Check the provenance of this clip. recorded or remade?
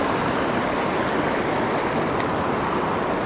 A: recorded